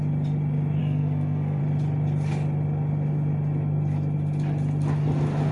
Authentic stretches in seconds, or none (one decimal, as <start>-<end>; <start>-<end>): 0.0-0.8; 1.6-5.5